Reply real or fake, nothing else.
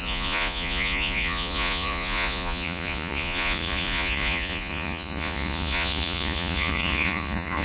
fake